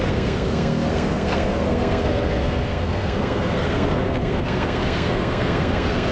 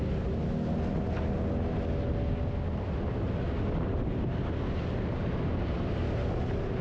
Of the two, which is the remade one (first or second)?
first